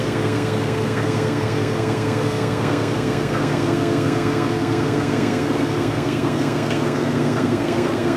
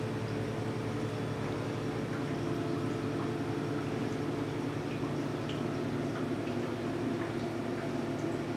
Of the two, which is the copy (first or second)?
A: first